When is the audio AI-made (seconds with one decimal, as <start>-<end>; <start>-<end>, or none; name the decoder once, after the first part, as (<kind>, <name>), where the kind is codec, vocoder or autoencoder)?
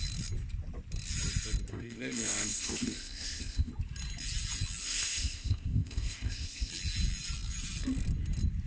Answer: 1.7-3.7 (codec, ZipCodec); 4.8-6.7